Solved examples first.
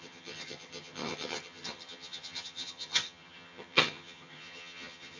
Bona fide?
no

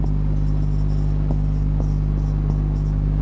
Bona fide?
yes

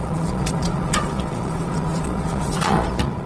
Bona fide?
no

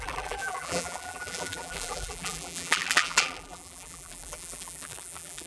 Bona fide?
no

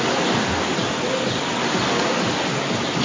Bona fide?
yes